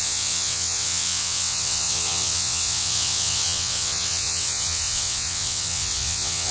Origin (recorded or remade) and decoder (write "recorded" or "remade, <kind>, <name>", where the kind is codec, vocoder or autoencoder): remade, vocoder, WaveNeXt